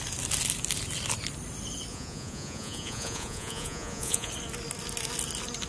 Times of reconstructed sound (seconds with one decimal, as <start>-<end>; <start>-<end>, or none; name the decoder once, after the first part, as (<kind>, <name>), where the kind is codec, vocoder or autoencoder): 1.9-4.3 (vocoder, Vocos)